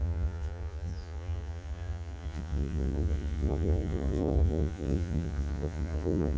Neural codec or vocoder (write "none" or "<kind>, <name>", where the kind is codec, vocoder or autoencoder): vocoder, Vocos